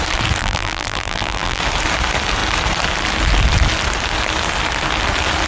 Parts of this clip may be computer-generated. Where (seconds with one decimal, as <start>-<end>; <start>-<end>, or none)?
0.4-1.6